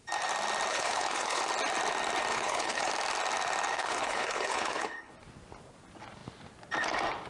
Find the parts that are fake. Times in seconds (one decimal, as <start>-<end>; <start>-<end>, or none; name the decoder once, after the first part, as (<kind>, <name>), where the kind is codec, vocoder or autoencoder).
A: 0.7-1.4 (codec, HILCodec); 2.3-2.9; 3.7-5.1